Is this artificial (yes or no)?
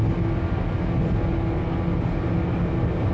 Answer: no